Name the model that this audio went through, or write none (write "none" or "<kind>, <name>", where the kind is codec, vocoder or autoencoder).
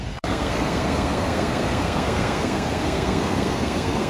codec, SNAC